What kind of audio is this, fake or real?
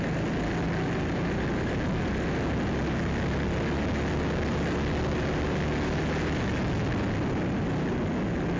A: real